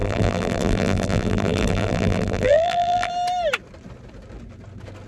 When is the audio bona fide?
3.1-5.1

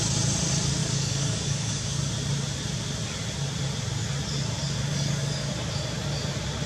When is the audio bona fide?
0.0-0.8; 2.1-4.9; 5.5-6.7